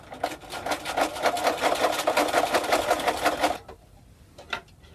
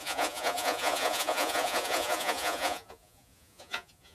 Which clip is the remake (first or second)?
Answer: second